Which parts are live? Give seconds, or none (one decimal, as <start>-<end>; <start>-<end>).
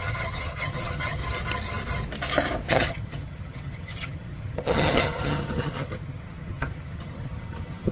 1.2-2.7